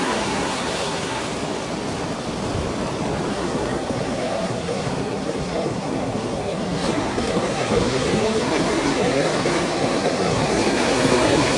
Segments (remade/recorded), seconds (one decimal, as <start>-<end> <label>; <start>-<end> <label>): 0.0-1.2 remade; 1.2-3.3 recorded; 3.3-11.6 remade